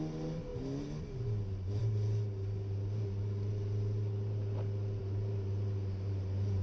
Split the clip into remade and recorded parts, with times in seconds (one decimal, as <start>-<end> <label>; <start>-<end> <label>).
0.0-6.6 recorded